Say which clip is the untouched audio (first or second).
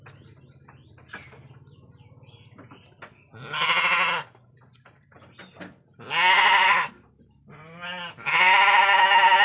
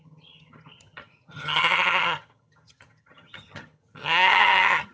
first